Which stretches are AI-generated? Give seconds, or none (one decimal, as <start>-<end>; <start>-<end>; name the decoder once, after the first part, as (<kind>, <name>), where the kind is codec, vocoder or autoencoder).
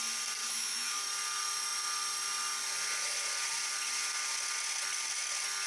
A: 0.4-1.0 (autoencoder, DAC-VAE)